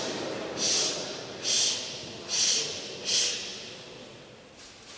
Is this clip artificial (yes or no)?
no